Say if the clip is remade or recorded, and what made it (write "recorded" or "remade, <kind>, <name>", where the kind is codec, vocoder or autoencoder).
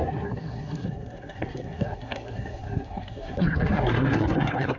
remade, codec, SNAC